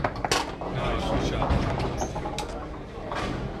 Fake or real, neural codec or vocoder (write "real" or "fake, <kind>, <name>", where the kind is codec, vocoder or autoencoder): real